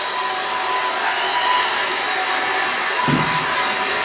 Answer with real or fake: real